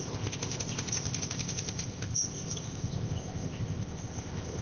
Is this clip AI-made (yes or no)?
yes